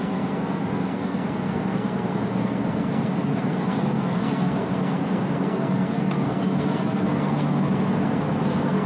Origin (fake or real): fake